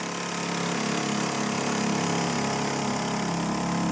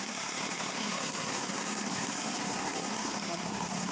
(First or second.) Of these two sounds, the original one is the first